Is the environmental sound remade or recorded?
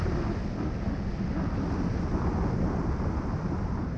recorded